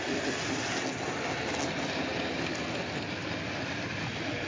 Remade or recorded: recorded